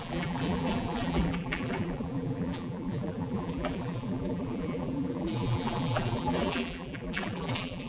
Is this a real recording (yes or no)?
no